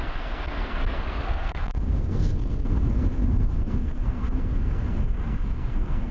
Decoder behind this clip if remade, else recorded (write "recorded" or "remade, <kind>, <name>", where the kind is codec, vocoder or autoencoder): remade, codec, SNAC